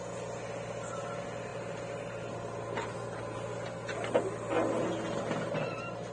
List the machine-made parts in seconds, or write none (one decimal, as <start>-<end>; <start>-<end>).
none